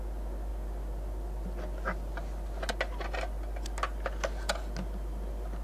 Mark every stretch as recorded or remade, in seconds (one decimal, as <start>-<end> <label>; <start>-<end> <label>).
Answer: 0.0-5.6 recorded